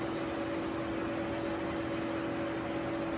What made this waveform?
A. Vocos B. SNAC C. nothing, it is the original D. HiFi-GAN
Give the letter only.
C